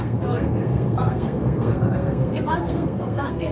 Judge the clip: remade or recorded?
remade